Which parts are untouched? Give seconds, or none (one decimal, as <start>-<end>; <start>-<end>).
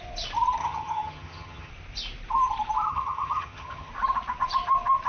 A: 0.0-0.6; 1.7-2.9; 3.9-5.1